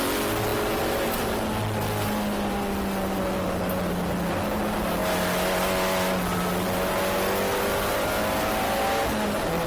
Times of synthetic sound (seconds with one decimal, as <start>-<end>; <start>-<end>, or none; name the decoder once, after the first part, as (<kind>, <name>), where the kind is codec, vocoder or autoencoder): none